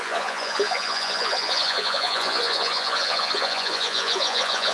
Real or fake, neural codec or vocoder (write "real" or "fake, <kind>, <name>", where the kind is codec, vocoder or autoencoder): fake, vocoder, Vocos